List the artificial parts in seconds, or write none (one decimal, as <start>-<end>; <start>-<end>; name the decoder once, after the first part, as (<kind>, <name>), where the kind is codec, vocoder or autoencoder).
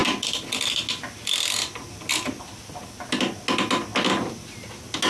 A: none